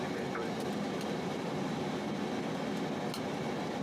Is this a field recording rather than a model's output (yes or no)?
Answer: yes